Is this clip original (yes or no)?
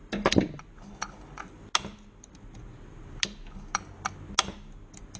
yes